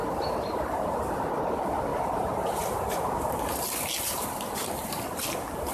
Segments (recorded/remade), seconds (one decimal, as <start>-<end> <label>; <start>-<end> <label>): 0.0-1.3 remade; 1.3-1.9 recorded; 1.9-3.4 remade; 3.4-5.7 recorded